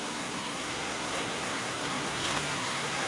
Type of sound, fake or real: fake